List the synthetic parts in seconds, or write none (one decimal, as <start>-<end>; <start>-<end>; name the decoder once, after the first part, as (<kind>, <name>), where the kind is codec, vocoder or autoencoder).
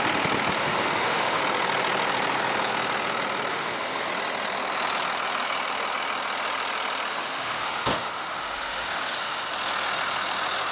0.6-1.4 (autoencoder, DAC-VAE); 3.5-4.1; 7.1-9.5